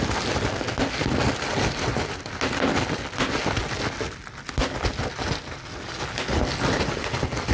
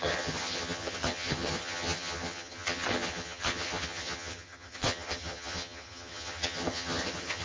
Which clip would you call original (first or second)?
first